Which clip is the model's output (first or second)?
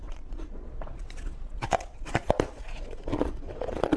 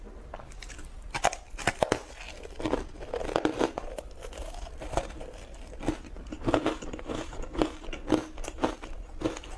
first